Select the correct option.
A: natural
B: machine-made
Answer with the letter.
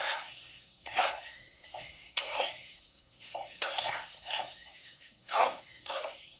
B